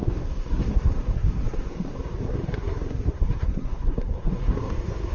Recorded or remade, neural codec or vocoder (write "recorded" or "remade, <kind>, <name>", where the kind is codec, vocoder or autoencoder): remade, codec, SNAC